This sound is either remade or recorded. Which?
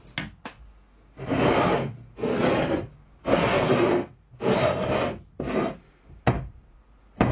recorded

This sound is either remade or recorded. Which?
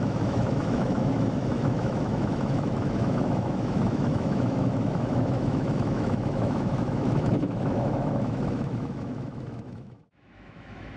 remade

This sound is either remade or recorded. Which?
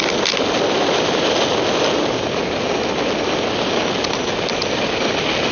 recorded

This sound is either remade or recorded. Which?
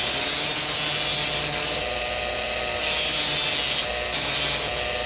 recorded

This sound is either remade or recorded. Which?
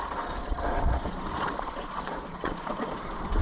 remade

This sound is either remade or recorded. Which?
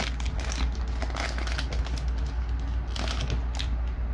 recorded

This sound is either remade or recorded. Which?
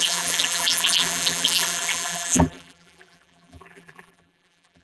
remade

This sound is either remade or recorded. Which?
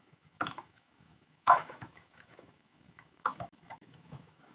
remade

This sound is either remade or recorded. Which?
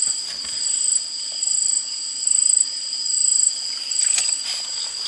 recorded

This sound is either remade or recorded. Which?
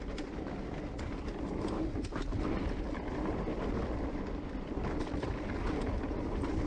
recorded